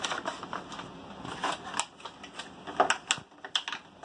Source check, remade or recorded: recorded